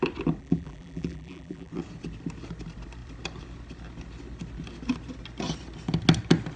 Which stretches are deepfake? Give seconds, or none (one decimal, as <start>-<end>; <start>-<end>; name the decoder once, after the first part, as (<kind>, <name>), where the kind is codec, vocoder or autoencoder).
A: 0.4-1.7 (vocoder, BigVGAN v2)